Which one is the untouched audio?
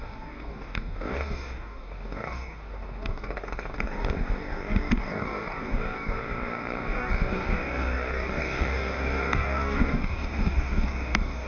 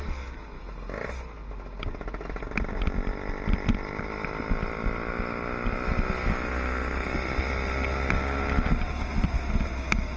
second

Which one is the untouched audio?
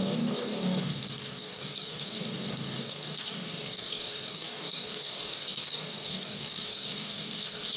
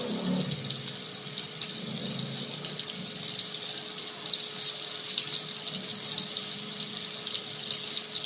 second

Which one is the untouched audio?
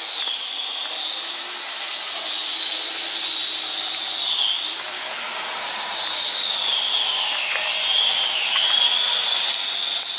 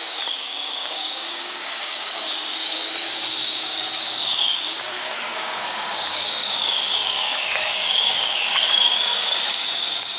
first